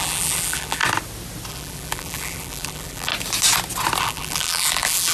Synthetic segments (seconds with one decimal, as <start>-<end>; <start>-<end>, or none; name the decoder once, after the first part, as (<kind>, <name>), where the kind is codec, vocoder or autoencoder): 0.0-0.8 (vocoder, BigVGAN v2); 1.5-3.1; 4.0-5.1